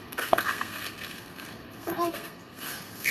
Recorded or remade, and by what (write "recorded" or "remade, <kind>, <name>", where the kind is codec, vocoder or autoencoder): remade, codec, SNAC